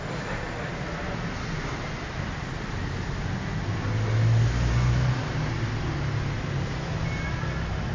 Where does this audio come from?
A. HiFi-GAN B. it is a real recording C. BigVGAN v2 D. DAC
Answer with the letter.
B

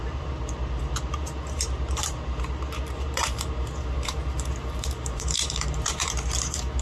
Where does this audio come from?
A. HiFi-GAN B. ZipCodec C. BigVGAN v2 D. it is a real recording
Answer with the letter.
C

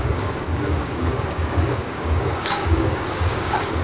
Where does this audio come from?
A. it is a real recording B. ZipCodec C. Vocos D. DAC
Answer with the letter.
D